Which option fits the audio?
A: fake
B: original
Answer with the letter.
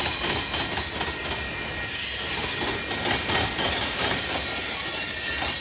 B